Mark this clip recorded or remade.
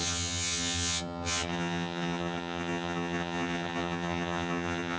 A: remade